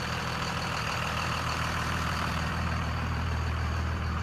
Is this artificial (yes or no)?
yes